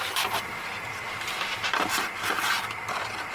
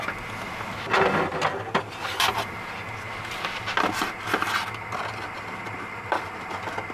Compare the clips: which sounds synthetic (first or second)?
first